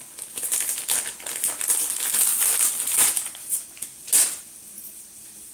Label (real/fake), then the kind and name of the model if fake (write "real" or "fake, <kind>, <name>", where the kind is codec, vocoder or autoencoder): real